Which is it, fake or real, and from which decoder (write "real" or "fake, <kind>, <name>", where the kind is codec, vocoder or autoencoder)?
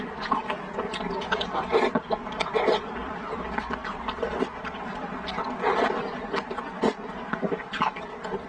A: fake, vocoder, BigVGAN v2